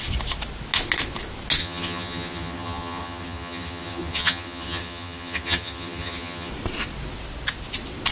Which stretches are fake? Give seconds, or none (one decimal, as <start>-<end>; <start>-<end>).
1.6-6.5

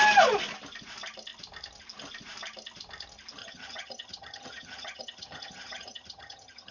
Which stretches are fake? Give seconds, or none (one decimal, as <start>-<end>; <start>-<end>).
3.4-6.7

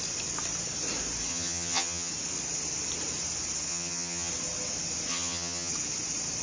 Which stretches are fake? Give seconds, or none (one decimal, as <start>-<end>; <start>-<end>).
1.3-2.1; 3.7-4.3; 5.1-5.7

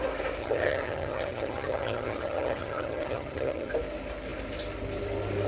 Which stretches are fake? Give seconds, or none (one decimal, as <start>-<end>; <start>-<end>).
0.4-3.7

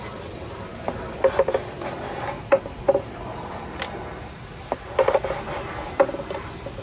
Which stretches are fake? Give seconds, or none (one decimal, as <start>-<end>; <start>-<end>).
none

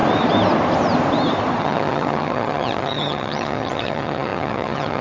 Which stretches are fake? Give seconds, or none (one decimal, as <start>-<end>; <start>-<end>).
1.6-5.0

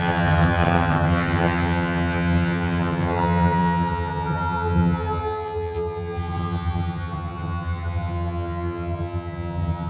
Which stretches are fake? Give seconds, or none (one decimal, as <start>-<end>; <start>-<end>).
0.0-9.9

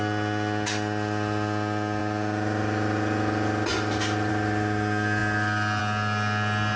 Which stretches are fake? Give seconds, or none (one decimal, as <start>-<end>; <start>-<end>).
none